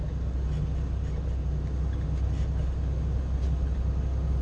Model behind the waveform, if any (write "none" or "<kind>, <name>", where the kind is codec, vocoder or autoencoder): none